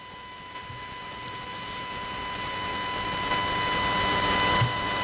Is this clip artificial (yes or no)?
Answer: no